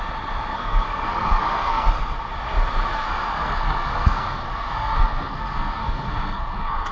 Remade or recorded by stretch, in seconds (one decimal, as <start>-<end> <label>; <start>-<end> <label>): 0.0-0.5 recorded; 0.5-1.9 remade; 1.9-2.9 recorded; 2.9-6.9 remade